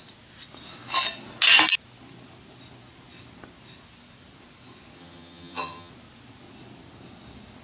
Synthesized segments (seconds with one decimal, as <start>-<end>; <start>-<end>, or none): 5.0-5.9